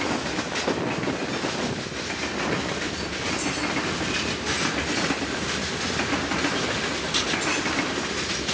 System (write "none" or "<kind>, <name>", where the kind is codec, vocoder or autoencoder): none